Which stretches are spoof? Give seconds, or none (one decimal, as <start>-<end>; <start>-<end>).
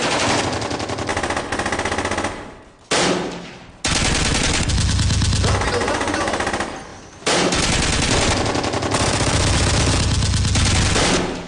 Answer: 5.8-6.3